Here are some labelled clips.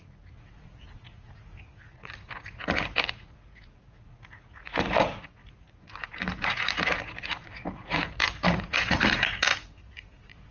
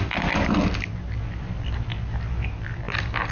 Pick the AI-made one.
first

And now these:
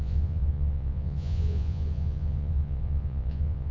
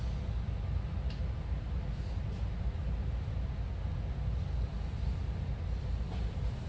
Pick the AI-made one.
first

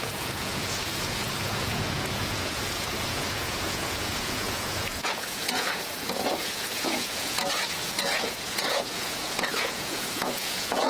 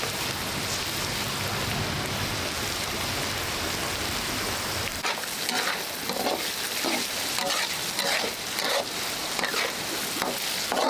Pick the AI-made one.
first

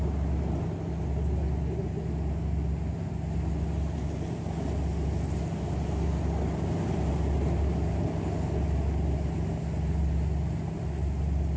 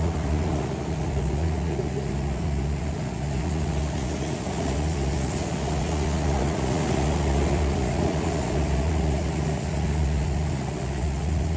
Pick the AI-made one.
second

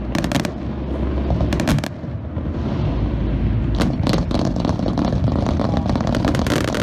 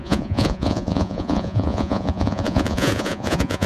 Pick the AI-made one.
second